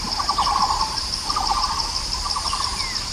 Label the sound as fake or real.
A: real